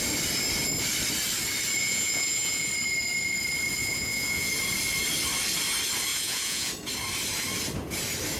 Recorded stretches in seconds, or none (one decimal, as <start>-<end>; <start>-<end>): 0.0-1.8; 2.7-3.8; 4.5-6.1; 6.7-8.4